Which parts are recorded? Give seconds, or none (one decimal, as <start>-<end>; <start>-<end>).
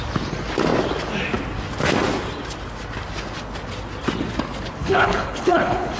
0.0-4.8